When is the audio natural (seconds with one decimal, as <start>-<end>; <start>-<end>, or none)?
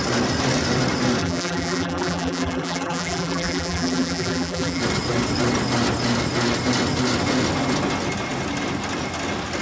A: 0.0-1.2; 4.8-9.6